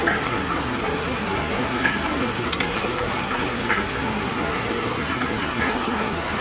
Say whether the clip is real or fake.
fake